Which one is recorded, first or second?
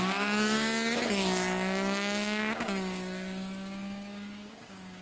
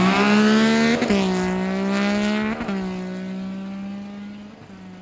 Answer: second